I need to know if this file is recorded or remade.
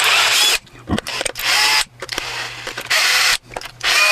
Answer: recorded